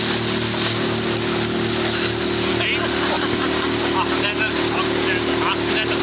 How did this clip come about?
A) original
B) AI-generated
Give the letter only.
A